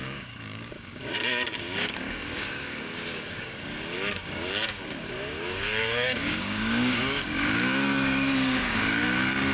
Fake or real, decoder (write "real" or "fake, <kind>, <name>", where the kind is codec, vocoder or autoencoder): fake, codec, DAC